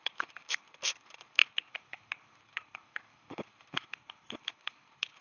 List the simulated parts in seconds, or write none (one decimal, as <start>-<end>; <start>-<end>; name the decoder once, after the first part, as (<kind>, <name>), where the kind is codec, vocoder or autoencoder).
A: 0.0-5.2 (codec, HILCodec)